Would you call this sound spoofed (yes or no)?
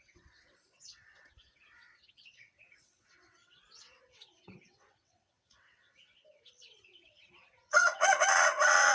yes